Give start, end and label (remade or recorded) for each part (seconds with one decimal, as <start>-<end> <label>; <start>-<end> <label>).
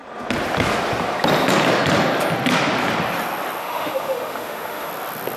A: 0.0-3.6 recorded; 3.6-4.9 remade; 4.9-5.4 recorded